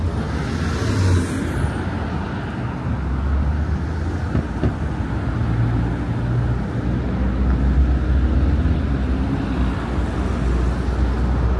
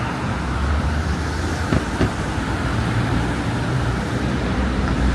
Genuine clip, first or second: first